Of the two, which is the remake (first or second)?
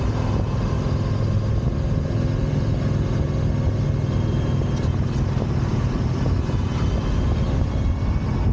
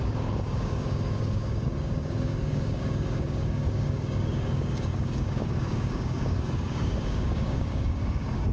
second